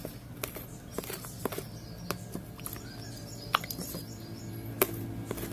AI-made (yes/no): no